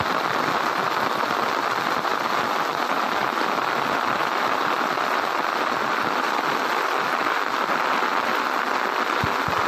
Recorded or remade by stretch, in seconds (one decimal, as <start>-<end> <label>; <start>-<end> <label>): 0.0-9.7 recorded

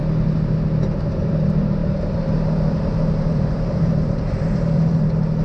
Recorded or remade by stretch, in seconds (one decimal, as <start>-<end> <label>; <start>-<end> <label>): 0.0-1.8 recorded; 1.8-5.0 remade; 5.0-5.4 recorded

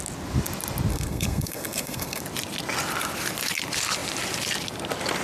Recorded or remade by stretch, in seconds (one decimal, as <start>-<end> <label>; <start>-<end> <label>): 0.0-0.9 recorded; 0.9-2.2 remade; 2.2-5.2 recorded